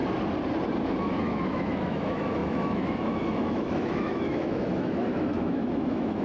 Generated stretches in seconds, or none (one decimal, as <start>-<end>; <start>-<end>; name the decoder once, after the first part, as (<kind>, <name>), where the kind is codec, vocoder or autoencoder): 0.8-6.2 (autoencoder, DAC-VAE)